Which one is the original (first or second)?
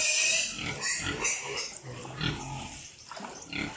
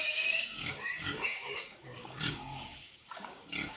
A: first